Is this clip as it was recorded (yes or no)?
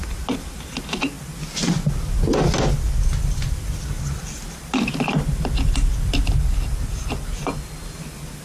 yes